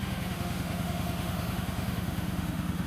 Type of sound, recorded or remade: remade